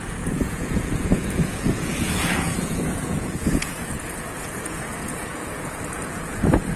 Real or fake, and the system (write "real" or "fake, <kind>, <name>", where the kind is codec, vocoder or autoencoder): fake, vocoder, Vocos